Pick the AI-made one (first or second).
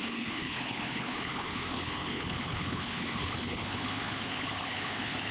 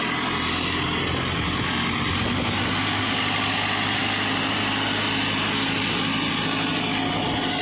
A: first